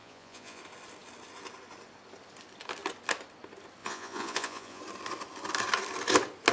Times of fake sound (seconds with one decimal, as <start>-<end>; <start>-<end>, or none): 0.0-0.6; 3.8-4.8